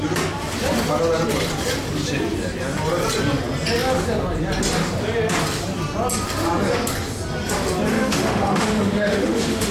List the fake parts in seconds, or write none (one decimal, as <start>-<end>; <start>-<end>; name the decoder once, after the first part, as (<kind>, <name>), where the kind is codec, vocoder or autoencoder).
7.9-9.7 (autoencoder, DAC-VAE)